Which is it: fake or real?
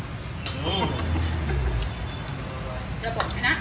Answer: real